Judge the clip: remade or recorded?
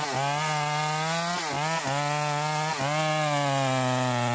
recorded